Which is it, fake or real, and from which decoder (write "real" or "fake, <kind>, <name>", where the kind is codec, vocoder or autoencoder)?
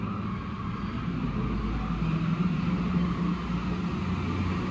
real